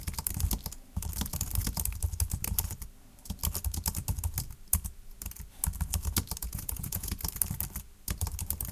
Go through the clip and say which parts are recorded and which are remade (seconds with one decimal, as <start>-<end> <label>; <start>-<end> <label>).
0.0-6.4 recorded; 6.4-7.2 remade; 7.2-8.7 recorded